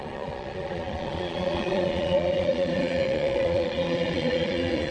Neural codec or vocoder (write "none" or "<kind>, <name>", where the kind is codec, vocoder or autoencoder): vocoder, Vocos